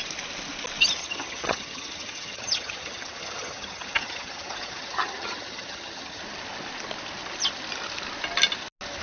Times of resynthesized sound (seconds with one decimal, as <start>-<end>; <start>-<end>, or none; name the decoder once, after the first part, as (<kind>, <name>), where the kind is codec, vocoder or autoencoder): 1.0-6.2 (vocoder, HiFi-GAN)